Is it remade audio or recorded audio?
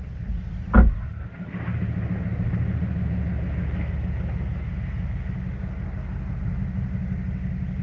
recorded